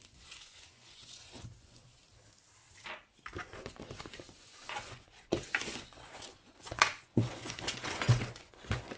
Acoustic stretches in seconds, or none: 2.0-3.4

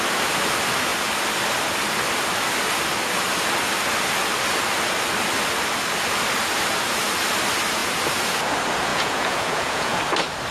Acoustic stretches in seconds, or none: 0.0-8.9; 10.0-10.5

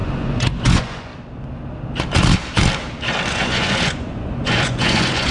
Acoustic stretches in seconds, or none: 1.1-3.3

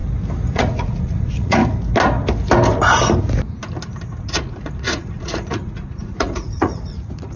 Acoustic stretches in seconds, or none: 0.0-0.5; 1.6-4.2

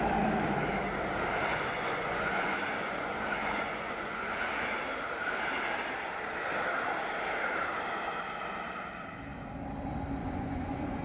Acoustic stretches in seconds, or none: 0.0-1.5; 4.5-10.2

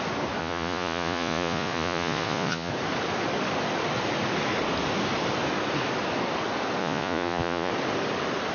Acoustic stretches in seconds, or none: 0.0-0.4; 2.7-6.8; 7.7-8.5

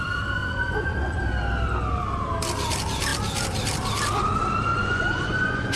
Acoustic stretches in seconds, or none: 0.0-0.4; 1.2-4.7

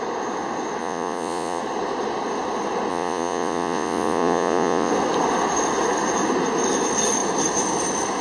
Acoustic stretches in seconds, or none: 0.0-0.8; 1.6-2.9; 4.9-8.2